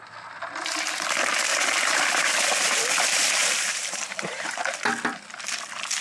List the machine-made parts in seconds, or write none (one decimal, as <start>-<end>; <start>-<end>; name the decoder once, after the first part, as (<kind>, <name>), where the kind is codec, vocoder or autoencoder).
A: 1.5-2.3 (vocoder, BigVGAN v2); 3.4-4.6